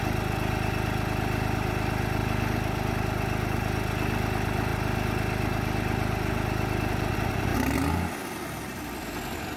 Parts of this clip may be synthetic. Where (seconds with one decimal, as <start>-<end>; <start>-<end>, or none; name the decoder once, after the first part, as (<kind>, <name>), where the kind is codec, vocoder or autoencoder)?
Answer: none